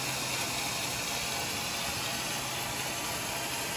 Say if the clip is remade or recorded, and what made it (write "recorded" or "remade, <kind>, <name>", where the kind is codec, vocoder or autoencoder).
recorded